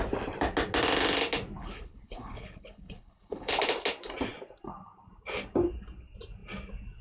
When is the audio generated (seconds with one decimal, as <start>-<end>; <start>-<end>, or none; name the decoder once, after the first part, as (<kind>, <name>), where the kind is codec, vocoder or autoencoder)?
1.6-3.5 (codec, HILCodec)